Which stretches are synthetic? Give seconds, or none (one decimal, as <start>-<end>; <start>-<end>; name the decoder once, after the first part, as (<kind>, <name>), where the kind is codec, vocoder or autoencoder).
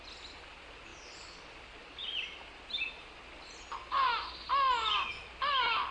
none